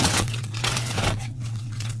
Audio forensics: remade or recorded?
remade